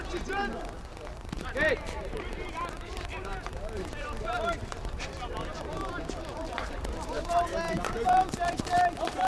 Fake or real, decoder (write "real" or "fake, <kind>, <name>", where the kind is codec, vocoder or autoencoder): fake, vocoder, BigVGAN v2